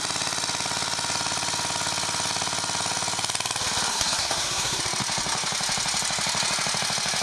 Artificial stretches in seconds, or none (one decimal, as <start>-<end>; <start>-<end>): 3.9-4.8